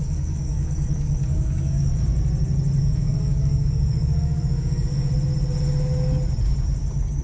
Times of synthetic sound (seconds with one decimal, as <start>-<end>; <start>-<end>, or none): 0.0-1.9; 2.8-5.1